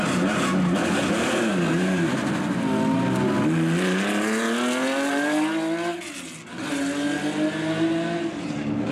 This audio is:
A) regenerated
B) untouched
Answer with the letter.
B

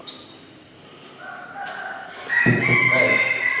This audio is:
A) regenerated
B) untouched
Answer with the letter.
B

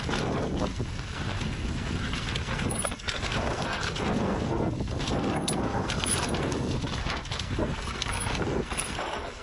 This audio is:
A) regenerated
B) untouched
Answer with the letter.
A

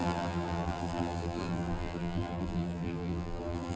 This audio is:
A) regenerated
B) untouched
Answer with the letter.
A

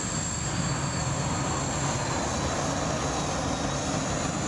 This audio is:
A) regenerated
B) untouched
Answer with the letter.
B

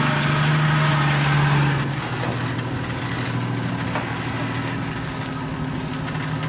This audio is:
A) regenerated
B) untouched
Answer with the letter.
B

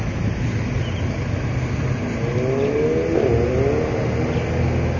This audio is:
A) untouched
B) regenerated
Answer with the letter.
A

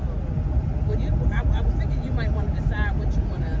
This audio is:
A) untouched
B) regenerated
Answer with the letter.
A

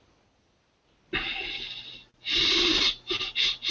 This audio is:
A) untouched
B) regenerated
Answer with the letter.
A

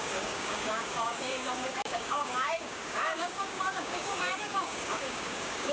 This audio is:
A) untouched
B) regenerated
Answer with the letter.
B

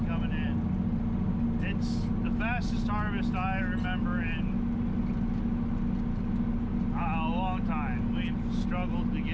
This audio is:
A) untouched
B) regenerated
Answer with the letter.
A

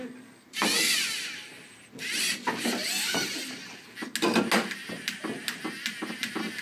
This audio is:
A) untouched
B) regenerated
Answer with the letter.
A